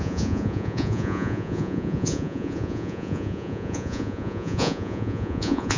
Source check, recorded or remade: remade